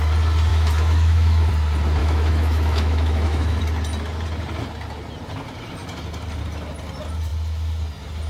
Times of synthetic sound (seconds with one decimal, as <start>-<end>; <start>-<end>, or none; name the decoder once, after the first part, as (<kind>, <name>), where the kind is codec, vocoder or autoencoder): 0.5-1.5 (autoencoder, DAC-VAE); 2.0-3.6

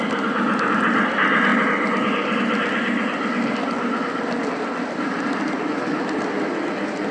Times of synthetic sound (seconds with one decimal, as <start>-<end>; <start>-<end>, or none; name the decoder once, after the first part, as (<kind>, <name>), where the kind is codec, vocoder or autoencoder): none

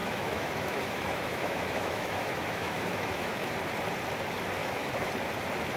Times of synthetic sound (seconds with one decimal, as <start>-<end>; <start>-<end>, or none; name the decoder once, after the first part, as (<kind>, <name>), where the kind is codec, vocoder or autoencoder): 0.0-3.5 (autoencoder, DAC-VAE); 4.6-5.1